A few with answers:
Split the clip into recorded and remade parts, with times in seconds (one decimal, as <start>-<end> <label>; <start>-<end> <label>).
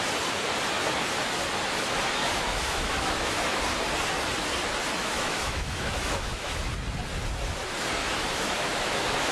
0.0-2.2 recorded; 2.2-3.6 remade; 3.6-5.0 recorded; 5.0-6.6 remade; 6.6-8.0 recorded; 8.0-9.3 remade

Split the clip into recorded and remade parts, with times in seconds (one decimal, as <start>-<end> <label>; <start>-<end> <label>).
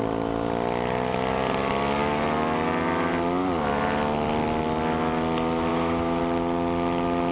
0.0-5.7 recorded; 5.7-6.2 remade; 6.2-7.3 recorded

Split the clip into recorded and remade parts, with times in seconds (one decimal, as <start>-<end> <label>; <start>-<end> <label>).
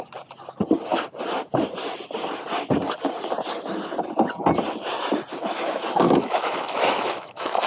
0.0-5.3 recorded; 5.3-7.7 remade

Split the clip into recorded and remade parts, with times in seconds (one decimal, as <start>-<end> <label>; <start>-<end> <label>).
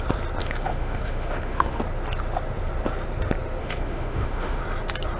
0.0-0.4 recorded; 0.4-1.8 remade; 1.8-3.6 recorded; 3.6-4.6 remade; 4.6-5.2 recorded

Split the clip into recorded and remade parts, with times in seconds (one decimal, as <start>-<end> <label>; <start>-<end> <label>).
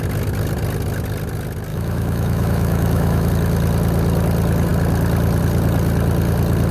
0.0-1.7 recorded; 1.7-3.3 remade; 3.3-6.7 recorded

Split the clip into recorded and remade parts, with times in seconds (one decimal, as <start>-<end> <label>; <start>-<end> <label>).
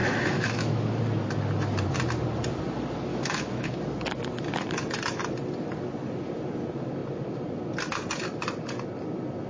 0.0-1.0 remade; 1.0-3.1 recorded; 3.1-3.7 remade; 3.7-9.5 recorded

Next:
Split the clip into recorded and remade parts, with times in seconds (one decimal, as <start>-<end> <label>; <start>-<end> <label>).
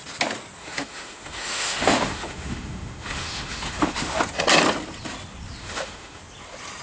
0.0-0.6 recorded; 0.6-4.2 remade; 4.2-5.6 recorded; 5.6-6.2 remade; 6.2-6.8 recorded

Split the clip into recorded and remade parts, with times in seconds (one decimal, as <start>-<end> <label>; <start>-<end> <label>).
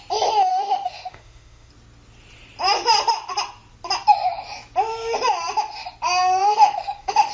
0.0-0.5 recorded; 0.5-1.7 remade; 1.7-6.4 recorded; 6.4-7.3 remade